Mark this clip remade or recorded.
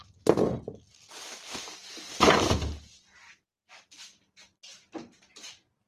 recorded